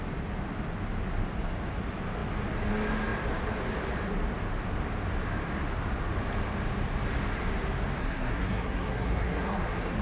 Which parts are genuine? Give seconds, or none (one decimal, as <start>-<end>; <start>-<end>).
0.0-8.0